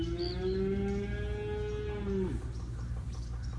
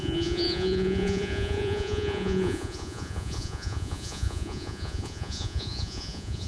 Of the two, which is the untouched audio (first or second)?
first